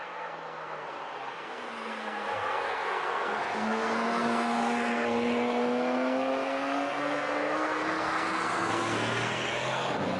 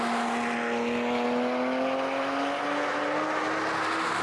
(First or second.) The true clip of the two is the second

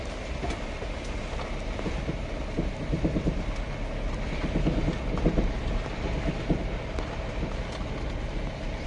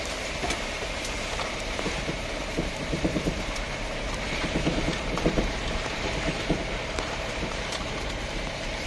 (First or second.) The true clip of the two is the first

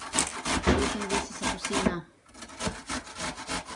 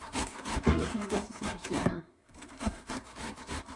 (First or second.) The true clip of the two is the first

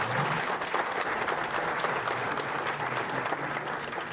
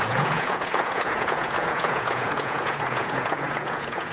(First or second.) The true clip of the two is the first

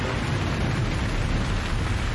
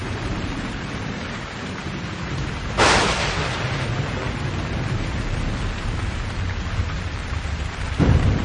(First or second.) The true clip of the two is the first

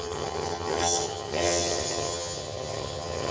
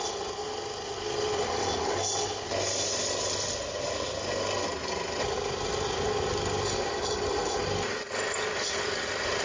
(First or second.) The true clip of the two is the second